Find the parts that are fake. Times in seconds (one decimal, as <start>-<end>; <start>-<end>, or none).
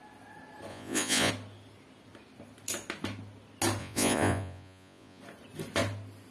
0.7-1.3; 3.8-5.2